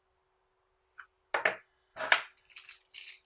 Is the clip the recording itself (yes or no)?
yes